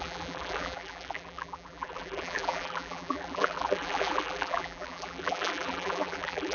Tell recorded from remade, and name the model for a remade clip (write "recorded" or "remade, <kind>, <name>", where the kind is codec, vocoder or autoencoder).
remade, vocoder, BigVGAN v2